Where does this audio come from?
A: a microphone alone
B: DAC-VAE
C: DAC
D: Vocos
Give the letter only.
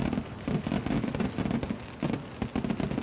A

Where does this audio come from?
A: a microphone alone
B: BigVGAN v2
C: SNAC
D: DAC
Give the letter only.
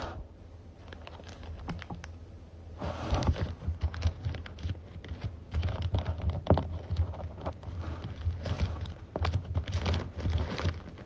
A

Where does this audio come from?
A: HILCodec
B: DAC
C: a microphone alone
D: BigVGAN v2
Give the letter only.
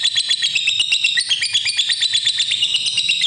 C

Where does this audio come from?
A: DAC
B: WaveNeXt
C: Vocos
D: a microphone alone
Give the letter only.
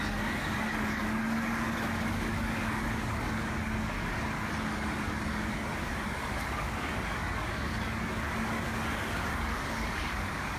A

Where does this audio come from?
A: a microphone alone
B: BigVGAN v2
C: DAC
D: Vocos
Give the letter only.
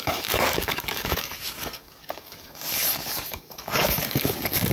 C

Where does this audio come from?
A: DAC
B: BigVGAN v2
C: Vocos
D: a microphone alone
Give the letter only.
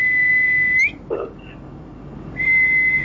D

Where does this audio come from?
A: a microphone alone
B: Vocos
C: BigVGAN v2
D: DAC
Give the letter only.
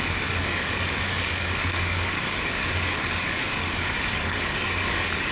D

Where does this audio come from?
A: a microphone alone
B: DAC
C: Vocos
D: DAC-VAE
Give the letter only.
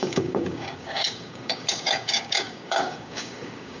B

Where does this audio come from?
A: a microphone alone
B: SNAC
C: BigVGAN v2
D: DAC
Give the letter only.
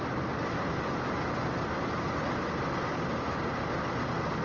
A